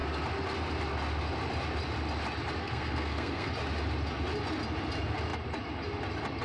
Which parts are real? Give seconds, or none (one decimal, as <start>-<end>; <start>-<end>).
0.0-2.6; 3.5-6.4